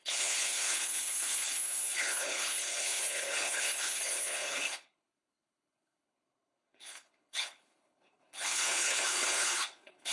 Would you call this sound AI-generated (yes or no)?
yes